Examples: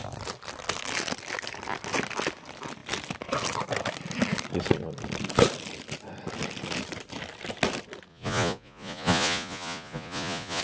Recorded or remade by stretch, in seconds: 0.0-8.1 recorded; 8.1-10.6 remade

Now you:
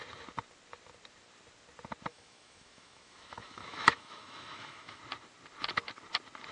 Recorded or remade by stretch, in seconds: 0.0-2.1 recorded; 2.1-5.0 remade; 5.0-6.5 recorded

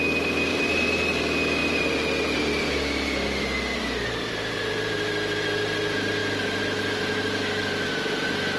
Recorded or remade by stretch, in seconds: 0.0-0.5 recorded; 0.5-1.0 remade; 1.0-1.6 recorded; 1.6-4.7 remade; 4.7-8.6 recorded

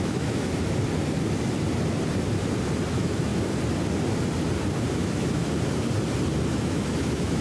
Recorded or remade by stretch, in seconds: 0.0-0.5 remade; 0.5-2.9 recorded; 2.9-3.3 remade; 3.3-4.9 recorded; 4.9-5.4 remade; 5.4-6.5 recorded; 6.5-7.4 remade

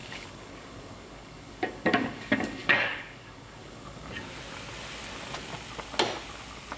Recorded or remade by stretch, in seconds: 0.0-4.1 remade; 4.1-6.8 recorded